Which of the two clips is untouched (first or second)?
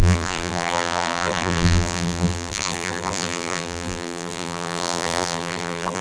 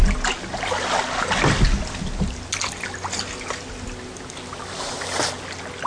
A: second